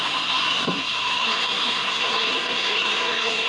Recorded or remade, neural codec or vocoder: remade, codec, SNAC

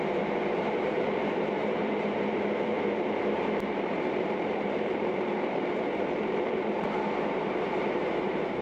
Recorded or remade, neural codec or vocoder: remade, vocoder, BigVGAN v2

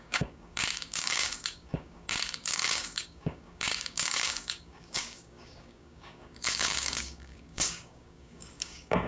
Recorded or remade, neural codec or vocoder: remade, codec, DAC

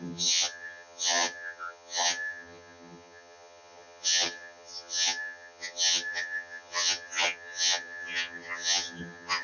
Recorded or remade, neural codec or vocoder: remade, vocoder, HiFi-GAN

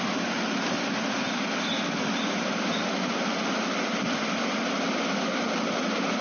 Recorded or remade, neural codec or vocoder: recorded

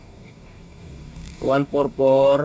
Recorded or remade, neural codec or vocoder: remade, codec, DAC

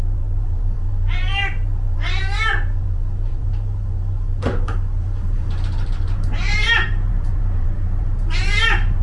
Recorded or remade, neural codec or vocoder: remade, vocoder, BigVGAN v2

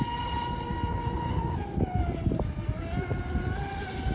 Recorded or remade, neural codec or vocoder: recorded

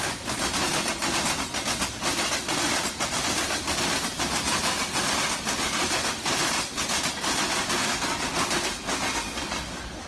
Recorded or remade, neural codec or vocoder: recorded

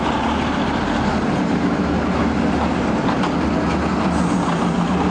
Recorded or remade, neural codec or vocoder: recorded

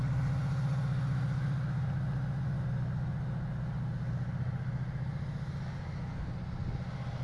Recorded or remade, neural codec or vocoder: recorded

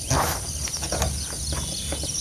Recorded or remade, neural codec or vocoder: recorded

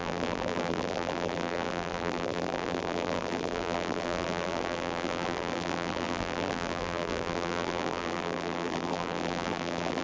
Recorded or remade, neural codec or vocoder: remade, vocoder, BigVGAN v2